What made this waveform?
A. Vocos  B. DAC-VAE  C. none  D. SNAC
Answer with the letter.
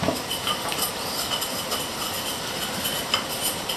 C